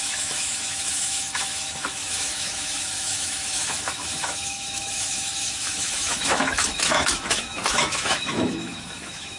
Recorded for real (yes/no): no